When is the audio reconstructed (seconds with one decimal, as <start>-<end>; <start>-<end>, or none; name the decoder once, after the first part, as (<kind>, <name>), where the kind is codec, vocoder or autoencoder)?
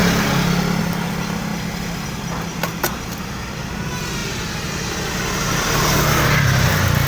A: none